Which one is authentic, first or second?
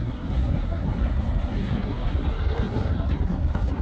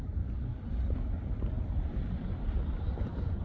second